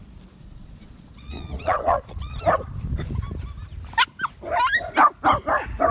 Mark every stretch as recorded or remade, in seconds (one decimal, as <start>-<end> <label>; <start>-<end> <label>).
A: 0.0-0.4 recorded; 0.4-2.4 remade; 2.4-5.9 recorded